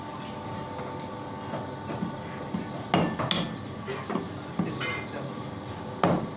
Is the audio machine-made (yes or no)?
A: no